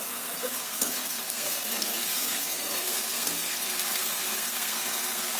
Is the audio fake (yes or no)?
yes